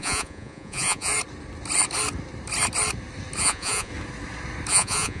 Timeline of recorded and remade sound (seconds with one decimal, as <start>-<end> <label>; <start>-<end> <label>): 0.0-1.1 remade; 1.1-3.4 recorded; 3.4-3.9 remade; 3.9-4.7 recorded; 4.7-5.2 remade